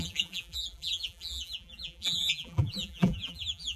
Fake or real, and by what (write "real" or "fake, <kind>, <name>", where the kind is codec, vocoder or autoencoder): fake, vocoder, BigVGAN v2